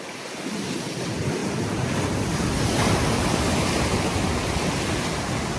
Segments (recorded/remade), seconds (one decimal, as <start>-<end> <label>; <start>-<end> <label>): 0.0-5.6 recorded